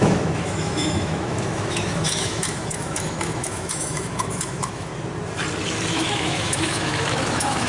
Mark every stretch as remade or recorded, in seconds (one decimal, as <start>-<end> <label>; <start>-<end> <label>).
0.0-4.9 remade; 4.9-5.9 recorded; 5.9-7.7 remade